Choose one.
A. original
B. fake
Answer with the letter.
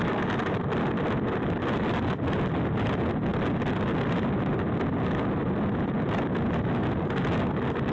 A